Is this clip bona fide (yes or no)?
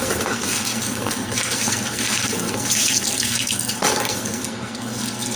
no